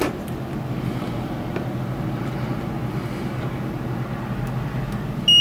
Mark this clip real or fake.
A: real